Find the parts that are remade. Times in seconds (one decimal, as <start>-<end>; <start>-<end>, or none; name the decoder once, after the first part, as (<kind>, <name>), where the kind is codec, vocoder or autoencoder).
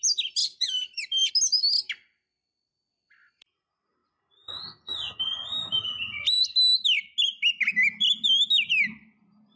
0.4-1.3 (vocoder, BigVGAN v2)